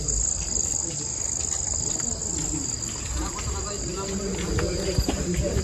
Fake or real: real